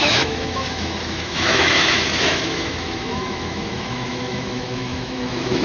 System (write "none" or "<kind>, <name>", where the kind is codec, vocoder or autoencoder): autoencoder, DAC-VAE